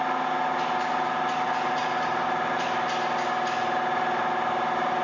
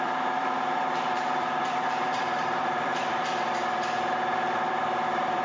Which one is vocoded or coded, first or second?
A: second